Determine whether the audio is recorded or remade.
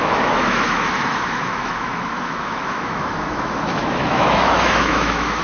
remade